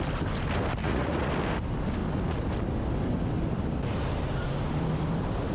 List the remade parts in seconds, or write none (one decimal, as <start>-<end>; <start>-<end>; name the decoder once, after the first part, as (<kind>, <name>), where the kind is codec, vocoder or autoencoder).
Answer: 0.8-1.3 (vocoder, Vocos)